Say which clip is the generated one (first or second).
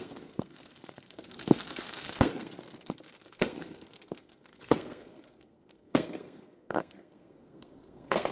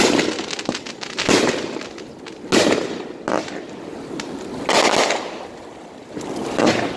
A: first